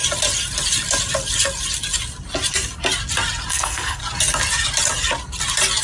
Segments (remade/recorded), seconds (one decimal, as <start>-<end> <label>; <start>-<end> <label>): 0.0-3.5 recorded; 3.5-4.0 remade; 4.0-5.8 recorded